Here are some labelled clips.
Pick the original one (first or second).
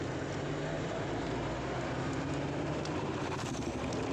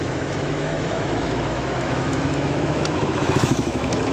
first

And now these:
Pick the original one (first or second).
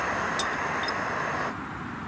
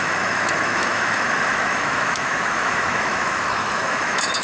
first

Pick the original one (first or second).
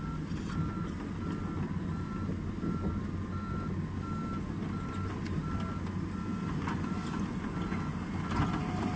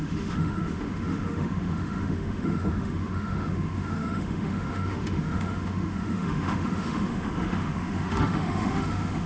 first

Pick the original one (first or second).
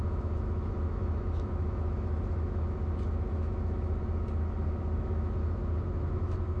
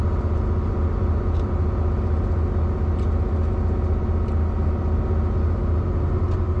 second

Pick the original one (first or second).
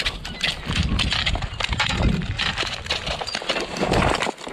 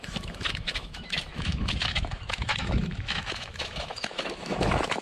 first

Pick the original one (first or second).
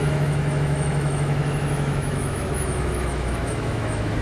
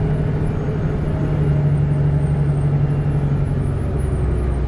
second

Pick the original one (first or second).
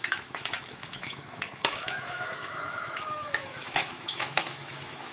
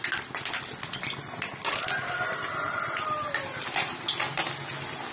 second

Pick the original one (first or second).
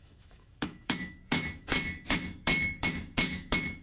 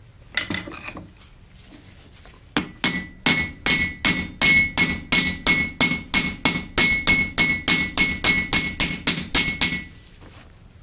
second